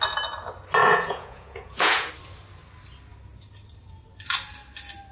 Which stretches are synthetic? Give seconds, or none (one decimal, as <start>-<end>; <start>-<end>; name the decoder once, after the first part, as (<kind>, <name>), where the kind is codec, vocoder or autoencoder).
0.8-2.1 (vocoder, Vocos)